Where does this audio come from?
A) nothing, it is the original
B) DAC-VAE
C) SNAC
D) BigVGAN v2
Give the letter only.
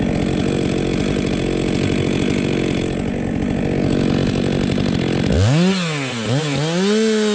A